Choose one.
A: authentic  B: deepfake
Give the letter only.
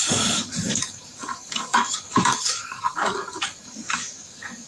B